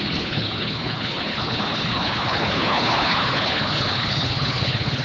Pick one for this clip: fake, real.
fake